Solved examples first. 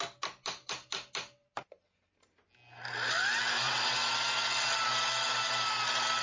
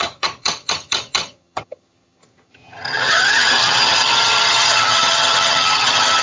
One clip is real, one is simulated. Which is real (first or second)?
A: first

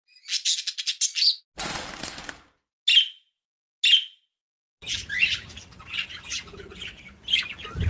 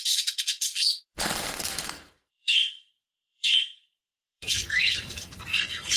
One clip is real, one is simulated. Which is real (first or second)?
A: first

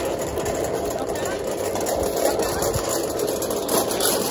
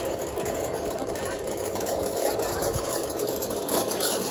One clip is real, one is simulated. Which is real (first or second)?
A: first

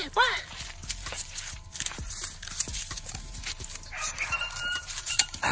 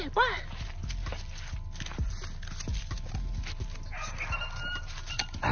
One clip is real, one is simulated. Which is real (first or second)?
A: second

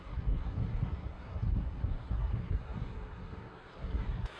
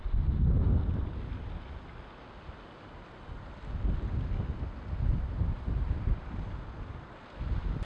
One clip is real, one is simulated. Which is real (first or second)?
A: second